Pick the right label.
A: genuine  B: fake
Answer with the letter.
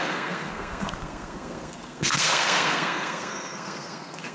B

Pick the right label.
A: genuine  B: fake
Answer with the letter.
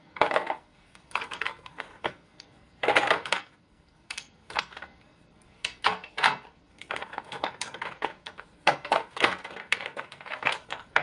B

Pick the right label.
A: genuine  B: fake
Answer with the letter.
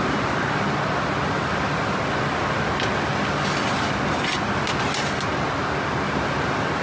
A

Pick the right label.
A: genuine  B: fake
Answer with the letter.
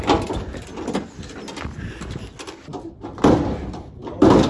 A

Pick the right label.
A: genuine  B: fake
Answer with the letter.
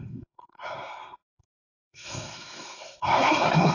B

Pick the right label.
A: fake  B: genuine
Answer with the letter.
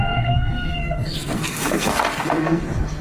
A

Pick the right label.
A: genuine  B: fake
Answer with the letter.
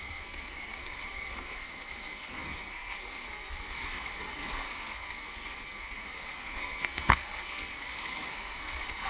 B